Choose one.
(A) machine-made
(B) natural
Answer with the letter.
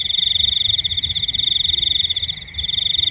B